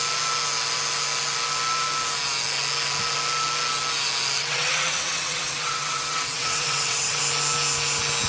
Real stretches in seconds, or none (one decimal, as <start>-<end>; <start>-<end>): 0.0-4.4; 7.2-8.3